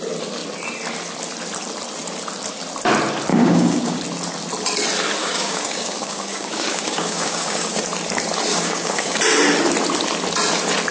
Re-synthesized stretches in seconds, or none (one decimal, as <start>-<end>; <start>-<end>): 3.3-4.0; 5.2-7.8; 8.5-9.2